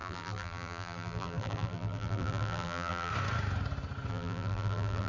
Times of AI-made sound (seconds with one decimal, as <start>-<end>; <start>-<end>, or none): 0.0-3.1; 4.1-5.1